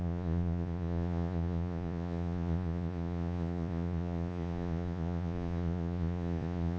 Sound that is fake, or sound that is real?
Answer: fake